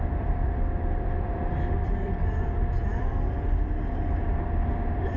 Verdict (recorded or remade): remade